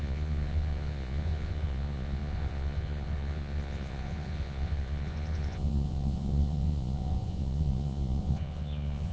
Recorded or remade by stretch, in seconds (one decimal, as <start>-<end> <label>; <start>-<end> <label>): 0.0-9.1 remade